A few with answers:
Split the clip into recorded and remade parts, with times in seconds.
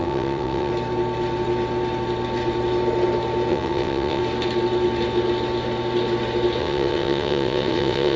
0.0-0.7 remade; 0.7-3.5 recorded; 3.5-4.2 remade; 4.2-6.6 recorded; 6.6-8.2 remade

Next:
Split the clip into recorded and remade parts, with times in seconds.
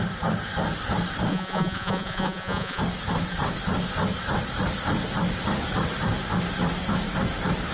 0.0-1.3 recorded; 1.3-2.8 remade; 2.8-7.7 recorded